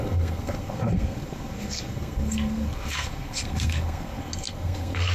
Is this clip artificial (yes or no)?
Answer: yes